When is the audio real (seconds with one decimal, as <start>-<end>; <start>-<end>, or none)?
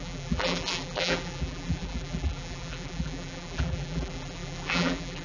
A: none